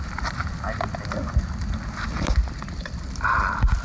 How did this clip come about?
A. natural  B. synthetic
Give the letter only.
B